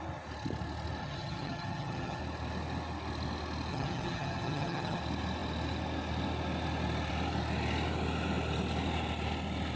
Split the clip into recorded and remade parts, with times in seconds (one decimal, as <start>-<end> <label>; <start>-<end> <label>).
0.0-1.0 recorded; 1.0-2.2 remade; 2.2-3.7 recorded; 3.7-5.0 remade; 5.0-9.8 recorded